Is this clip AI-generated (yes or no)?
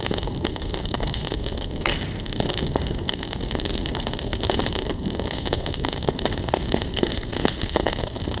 yes